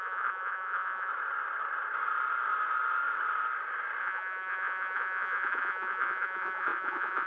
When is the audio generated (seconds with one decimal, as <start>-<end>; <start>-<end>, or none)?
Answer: 0.0-1.1; 4.0-7.3